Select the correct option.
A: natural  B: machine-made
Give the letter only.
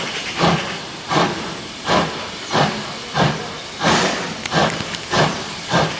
B